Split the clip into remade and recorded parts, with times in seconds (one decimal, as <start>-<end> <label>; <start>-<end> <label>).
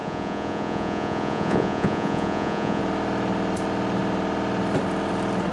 0.0-2.8 remade; 2.8-5.5 recorded